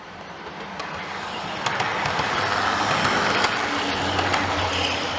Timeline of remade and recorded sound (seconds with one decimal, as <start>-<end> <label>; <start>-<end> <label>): 0.0-5.2 recorded